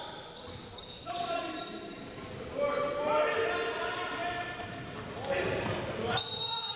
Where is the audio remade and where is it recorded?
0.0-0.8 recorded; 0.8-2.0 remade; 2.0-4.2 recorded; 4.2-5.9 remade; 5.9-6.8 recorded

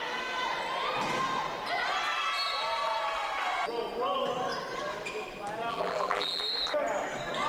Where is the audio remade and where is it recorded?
0.0-5.7 recorded; 5.7-6.4 remade; 6.4-7.5 recorded

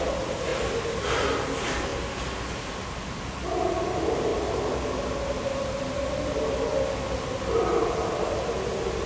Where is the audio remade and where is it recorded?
0.0-9.1 recorded